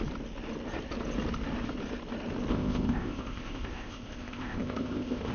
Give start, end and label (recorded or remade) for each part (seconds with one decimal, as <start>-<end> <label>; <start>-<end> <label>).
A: 0.0-2.5 recorded; 2.5-5.3 remade